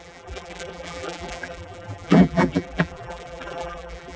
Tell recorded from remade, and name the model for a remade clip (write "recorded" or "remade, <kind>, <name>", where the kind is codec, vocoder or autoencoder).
remade, vocoder, BigVGAN v2